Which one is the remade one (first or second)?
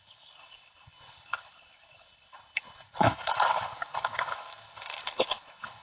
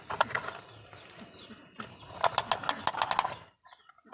first